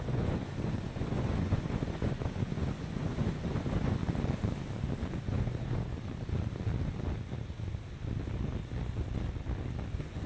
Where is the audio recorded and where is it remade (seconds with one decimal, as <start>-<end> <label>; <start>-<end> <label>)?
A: 0.0-4.0 remade; 4.0-5.1 recorded; 5.1-5.9 remade; 5.9-9.9 recorded; 9.9-10.3 remade